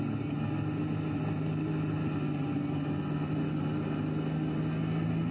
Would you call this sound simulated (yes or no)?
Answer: no